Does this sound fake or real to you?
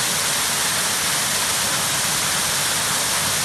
real